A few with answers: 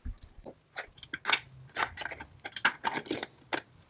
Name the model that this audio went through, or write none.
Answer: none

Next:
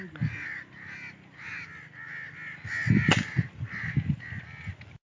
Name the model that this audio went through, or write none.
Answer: none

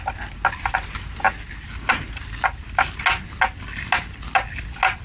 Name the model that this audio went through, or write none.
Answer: none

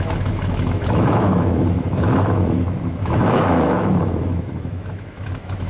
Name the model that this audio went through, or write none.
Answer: autoencoder, DAC-VAE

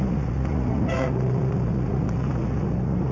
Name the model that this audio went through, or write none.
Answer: vocoder, Vocos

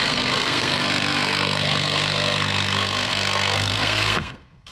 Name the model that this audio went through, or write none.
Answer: codec, SNAC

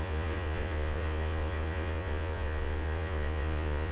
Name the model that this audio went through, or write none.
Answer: vocoder, Vocos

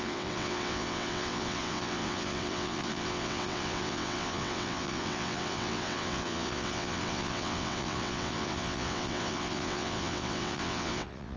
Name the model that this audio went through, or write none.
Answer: vocoder, WaveNeXt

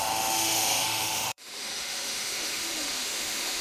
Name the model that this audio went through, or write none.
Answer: autoencoder, DAC-VAE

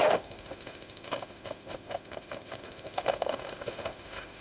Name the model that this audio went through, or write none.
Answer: autoencoder, DAC-VAE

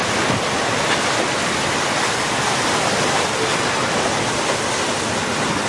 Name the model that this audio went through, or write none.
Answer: none